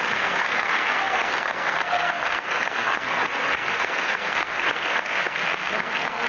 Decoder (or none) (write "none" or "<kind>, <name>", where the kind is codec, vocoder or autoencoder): codec, SNAC